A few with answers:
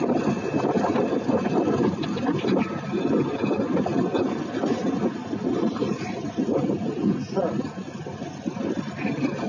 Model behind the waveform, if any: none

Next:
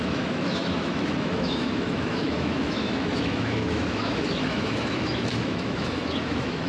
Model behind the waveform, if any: autoencoder, DAC-VAE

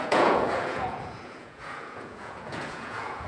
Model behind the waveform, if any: vocoder, Vocos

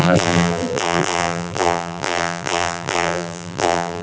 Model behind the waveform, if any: vocoder, BigVGAN v2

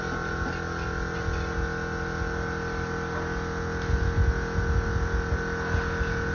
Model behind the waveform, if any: none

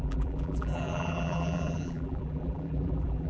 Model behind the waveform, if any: vocoder, BigVGAN v2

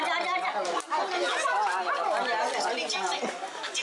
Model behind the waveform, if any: none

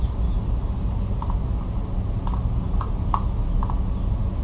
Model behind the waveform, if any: none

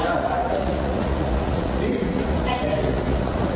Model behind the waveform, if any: vocoder, Vocos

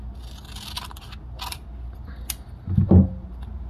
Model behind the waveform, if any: none